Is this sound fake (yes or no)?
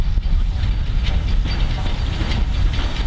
no